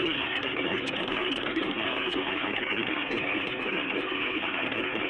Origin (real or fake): fake